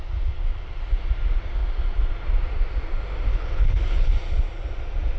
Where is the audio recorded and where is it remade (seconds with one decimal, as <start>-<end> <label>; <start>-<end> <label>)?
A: 0.0-3.3 recorded; 3.3-4.1 remade; 4.1-5.2 recorded